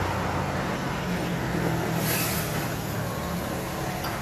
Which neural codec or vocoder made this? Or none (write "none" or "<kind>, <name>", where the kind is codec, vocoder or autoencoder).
none